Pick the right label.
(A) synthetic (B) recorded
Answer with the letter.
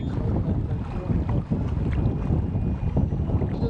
B